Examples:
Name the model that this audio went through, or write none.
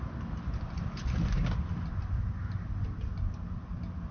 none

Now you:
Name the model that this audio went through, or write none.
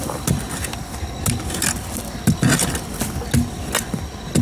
none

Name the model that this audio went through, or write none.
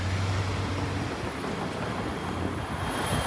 none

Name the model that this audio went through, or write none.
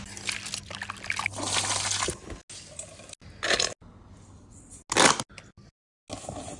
none